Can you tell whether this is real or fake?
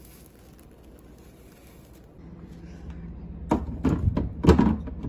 real